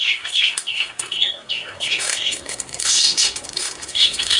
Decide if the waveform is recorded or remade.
remade